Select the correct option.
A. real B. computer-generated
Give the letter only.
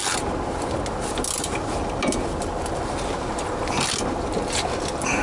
A